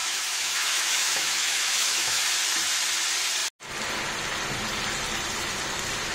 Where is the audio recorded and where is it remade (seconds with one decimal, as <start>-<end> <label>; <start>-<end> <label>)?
0.0-2.2 remade; 2.2-6.1 recorded